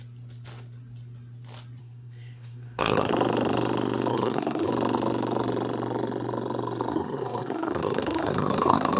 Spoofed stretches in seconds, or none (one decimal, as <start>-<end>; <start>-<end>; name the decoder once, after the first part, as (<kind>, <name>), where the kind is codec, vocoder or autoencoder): 1.8-3.1 (codec, SNAC); 4.1-4.7; 6.9-9.0